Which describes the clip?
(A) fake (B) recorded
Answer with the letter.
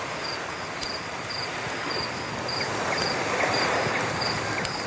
B